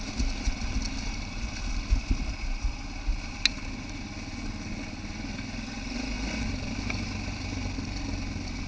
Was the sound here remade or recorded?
recorded